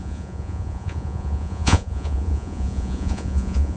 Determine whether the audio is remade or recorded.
remade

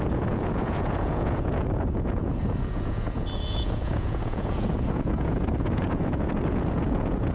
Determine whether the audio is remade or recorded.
remade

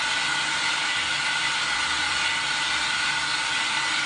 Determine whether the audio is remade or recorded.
recorded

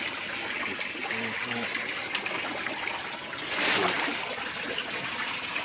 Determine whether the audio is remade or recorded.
recorded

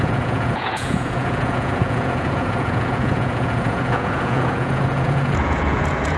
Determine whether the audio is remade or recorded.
remade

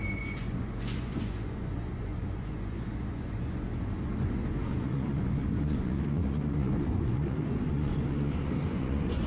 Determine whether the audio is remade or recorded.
remade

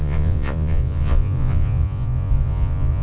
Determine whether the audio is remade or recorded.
remade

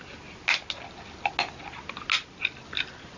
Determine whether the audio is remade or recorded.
recorded